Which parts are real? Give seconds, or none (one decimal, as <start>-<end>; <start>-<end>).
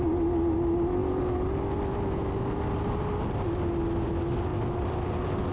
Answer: 0.0-5.5